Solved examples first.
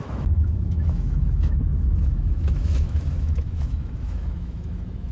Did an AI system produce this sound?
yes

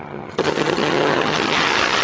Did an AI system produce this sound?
yes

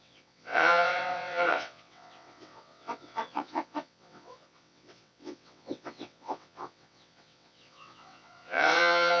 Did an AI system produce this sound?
yes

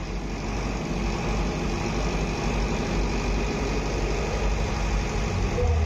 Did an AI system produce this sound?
no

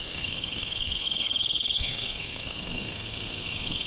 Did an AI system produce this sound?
yes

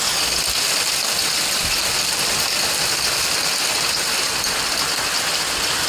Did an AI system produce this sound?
no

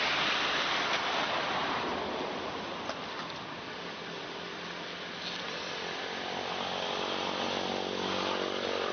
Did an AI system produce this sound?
no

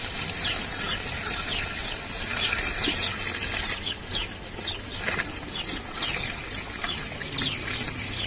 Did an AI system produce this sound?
yes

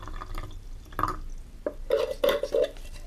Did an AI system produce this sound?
no